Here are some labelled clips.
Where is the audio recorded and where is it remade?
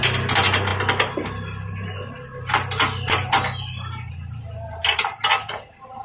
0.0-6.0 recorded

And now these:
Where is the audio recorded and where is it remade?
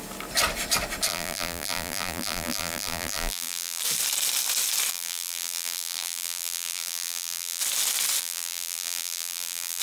0.0-1.1 recorded; 1.1-3.8 remade; 3.8-4.9 recorded; 4.9-7.6 remade; 7.6-8.2 recorded; 8.2-9.8 remade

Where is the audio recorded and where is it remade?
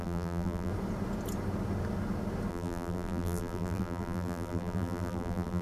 0.0-0.7 remade; 0.7-2.5 recorded; 2.5-5.6 remade